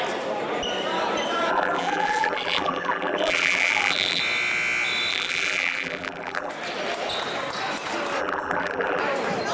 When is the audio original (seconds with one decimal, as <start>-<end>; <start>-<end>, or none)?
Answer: 0.0-1.5; 4.2-5.1; 6.5-8.2; 9.0-9.5